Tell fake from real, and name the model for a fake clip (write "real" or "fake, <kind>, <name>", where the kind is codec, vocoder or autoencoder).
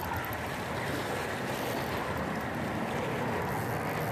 real